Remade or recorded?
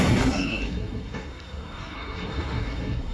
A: remade